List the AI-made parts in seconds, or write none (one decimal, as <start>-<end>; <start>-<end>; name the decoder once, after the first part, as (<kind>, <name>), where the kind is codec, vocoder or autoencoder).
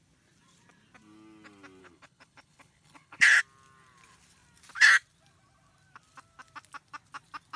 1.8-3.4 (codec, HILCodec)